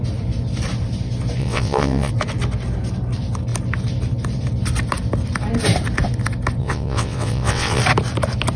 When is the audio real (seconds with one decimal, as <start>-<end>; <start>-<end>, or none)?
0.0-1.4; 2.1-6.6; 7.8-8.6